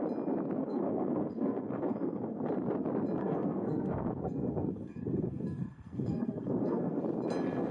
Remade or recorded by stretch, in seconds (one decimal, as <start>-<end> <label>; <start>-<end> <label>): 0.0-0.6 recorded; 0.6-2.5 remade; 2.5-3.2 recorded; 3.2-7.0 remade; 7.0-7.7 recorded

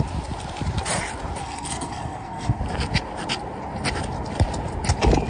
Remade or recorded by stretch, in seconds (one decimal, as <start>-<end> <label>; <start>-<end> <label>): 0.0-1.4 recorded; 1.4-2.6 remade; 2.6-5.3 recorded

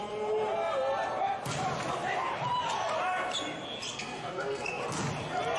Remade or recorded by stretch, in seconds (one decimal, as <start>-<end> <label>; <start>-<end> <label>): 0.0-3.9 recorded; 3.9-4.8 remade; 4.8-5.6 recorded

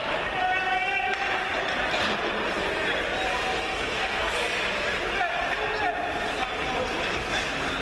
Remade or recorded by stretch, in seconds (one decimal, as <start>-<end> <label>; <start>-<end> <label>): 0.0-3.7 recorded; 3.7-4.3 remade; 4.3-7.8 recorded

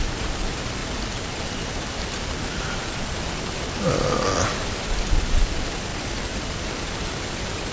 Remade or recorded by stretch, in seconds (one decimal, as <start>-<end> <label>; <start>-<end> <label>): 0.0-7.7 recorded